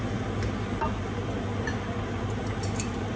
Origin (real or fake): real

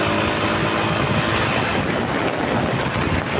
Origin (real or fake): real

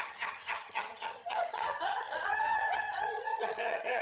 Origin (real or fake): fake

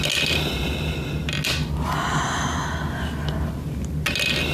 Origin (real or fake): real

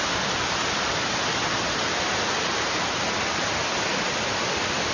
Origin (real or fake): real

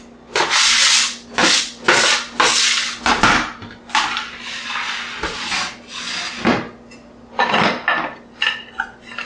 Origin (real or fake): real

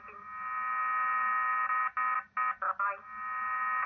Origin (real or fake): real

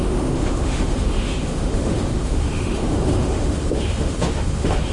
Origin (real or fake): fake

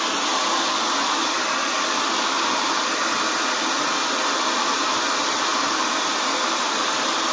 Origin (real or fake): fake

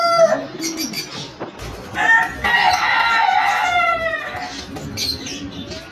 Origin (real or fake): real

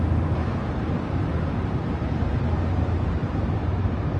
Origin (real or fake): fake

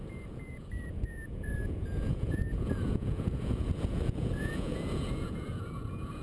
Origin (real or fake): fake